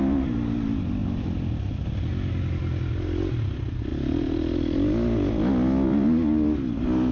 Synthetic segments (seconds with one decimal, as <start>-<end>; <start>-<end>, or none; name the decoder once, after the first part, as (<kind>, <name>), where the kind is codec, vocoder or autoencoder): none